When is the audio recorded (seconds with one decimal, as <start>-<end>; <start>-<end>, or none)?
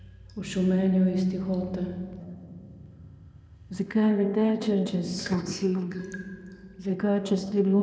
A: 0.0-2.2; 6.0-6.9